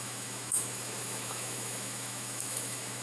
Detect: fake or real fake